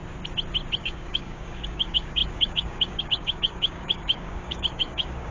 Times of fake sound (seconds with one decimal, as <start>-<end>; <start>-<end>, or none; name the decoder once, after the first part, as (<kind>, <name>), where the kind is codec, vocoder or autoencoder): 0.8-5.3 (codec, DAC)